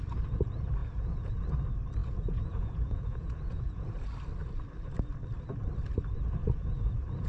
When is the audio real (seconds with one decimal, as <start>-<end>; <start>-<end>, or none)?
0.0-0.8; 1.4-2.0; 4.0-6.4